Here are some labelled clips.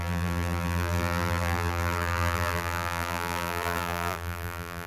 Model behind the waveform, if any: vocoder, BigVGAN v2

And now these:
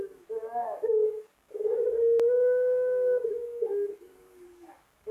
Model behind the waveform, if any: codec, DAC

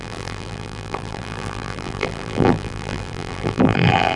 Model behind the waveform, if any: vocoder, BigVGAN v2